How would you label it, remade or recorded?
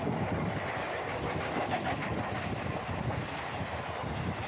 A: recorded